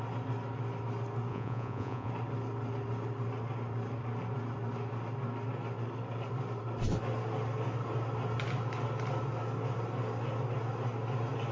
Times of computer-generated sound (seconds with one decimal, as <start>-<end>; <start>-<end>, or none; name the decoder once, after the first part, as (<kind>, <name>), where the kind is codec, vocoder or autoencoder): 1.3-2.1 (vocoder, Vocos)